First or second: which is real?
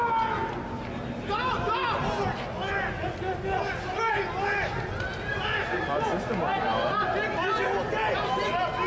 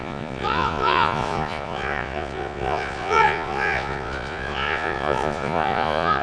first